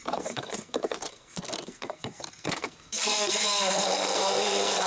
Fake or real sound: fake